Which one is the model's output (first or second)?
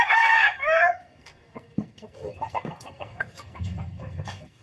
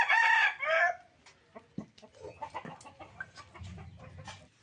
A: first